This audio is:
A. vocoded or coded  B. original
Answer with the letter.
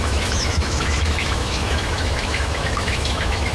A